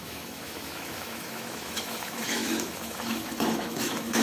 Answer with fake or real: fake